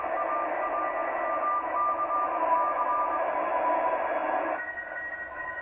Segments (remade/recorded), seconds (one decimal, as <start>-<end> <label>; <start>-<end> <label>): 0.0-5.6 recorded